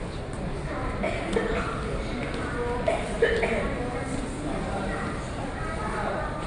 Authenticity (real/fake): real